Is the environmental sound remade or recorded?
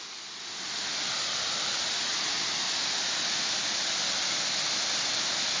recorded